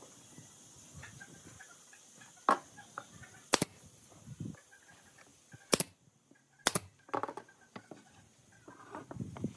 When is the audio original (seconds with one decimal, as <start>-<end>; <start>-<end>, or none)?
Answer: 0.0-9.6